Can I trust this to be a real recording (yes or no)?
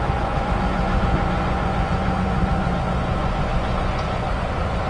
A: no